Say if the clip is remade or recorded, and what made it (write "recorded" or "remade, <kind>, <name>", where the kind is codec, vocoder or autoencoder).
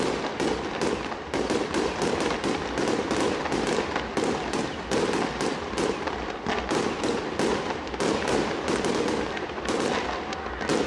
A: recorded